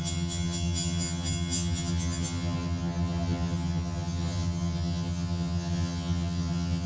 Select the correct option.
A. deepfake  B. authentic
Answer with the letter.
A